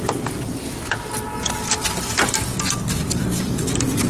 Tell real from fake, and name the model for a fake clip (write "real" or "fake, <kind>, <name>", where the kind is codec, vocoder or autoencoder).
real